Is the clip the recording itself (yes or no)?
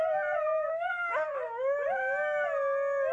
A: yes